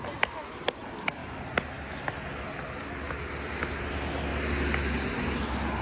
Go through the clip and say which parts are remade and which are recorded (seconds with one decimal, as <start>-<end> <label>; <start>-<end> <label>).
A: 0.0-5.8 recorded